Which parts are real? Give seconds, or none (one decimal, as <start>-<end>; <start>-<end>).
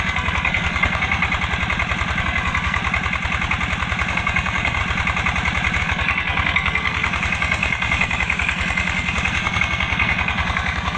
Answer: 1.2-2.2; 2.8-4.1; 4.8-5.8